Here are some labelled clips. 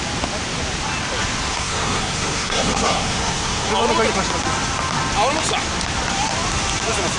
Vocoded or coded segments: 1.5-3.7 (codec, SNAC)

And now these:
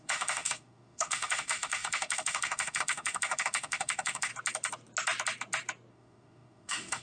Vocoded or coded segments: 0.0-4.3 (autoencoder, DAC-VAE); 5.9-7.0

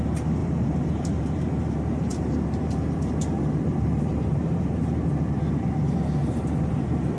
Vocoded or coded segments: 0.4-1.6 (vocoder, BigVGAN v2); 2.1-4.9; 6.2-7.2

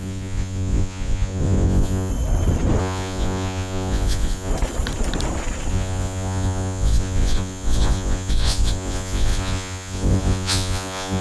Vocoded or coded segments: 0.0-2.1 (vocoder, Vocos); 2.8-4.5; 5.7-11.2

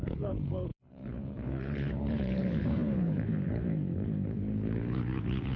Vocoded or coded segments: 0.0-5.6 (codec, HILCodec)